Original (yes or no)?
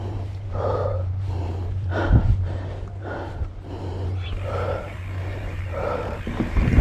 no